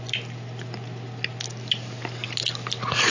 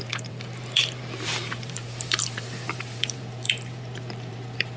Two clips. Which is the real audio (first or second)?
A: first